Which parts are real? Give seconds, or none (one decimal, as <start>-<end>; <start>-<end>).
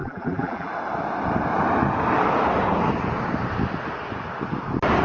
0.7-5.0